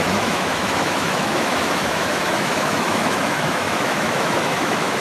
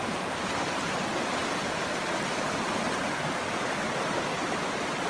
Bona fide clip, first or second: second